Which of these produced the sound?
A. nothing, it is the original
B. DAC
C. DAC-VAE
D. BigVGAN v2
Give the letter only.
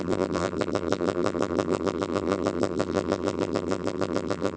D